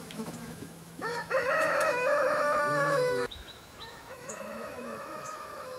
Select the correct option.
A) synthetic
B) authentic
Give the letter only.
A